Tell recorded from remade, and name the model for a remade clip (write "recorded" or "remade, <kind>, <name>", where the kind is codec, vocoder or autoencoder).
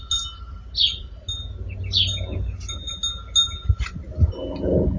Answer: recorded